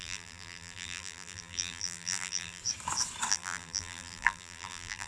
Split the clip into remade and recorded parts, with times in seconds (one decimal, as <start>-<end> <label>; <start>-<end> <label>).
0.0-2.6 remade; 2.6-3.3 recorded; 3.3-5.1 remade